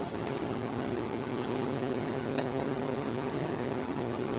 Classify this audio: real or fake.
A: fake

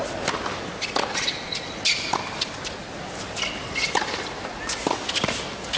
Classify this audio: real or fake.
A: real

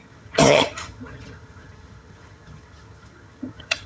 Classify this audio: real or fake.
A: fake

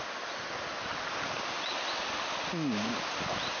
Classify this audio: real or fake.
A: real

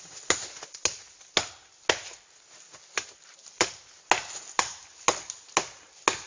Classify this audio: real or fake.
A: real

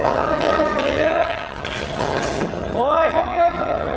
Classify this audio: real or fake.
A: fake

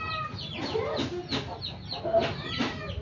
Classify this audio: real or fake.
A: real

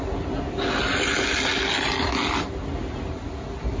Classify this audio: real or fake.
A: real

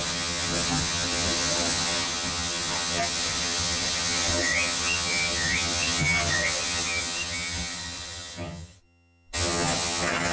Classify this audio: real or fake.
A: fake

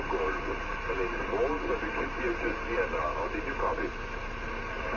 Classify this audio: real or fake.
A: real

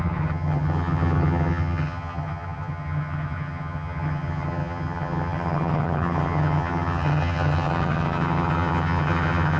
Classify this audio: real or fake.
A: fake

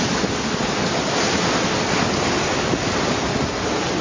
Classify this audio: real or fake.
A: real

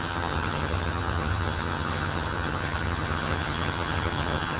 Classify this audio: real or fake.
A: fake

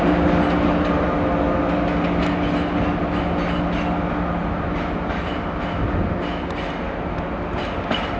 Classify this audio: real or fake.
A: real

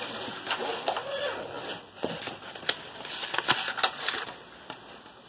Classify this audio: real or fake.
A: real